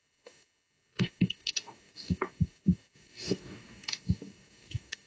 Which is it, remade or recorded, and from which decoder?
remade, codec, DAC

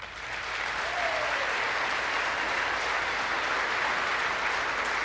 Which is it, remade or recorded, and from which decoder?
recorded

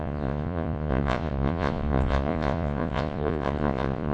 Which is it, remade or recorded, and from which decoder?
remade, vocoder, Vocos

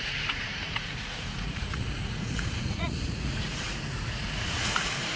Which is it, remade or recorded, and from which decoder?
remade, vocoder, Vocos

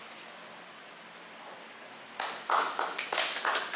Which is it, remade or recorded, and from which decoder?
recorded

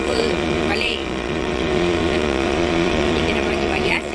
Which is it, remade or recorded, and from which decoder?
remade, vocoder, Vocos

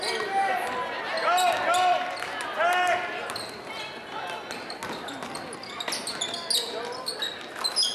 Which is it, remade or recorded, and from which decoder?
recorded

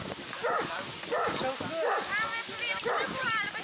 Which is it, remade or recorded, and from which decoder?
recorded